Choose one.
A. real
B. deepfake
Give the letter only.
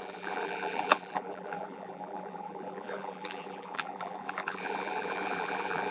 B